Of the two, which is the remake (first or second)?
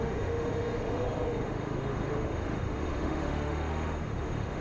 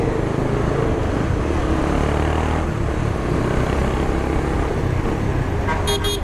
first